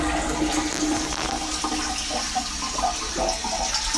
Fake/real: real